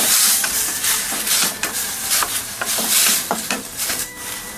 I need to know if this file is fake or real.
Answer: fake